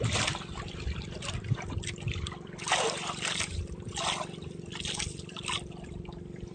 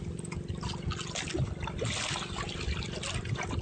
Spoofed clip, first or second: first